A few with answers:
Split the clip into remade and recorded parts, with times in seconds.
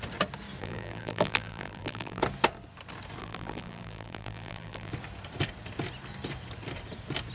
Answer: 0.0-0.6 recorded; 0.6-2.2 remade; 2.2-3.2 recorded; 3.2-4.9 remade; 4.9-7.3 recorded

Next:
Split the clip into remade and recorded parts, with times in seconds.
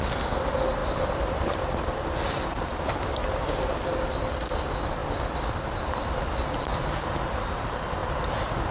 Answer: 0.0-0.8 recorded; 0.8-1.9 remade; 1.9-8.7 recorded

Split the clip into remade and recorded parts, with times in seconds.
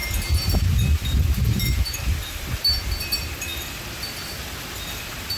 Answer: 0.0-1.2 recorded; 1.2-5.4 remade